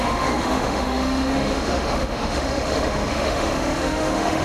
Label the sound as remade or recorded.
remade